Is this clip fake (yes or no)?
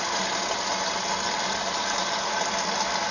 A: no